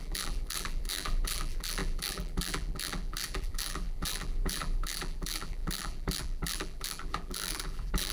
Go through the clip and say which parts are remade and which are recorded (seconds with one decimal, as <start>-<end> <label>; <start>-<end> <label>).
0.0-8.1 remade